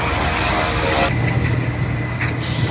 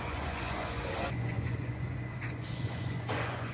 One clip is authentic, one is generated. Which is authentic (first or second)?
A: first